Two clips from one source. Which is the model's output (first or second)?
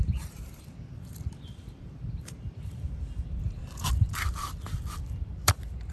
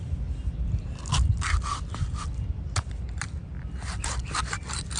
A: first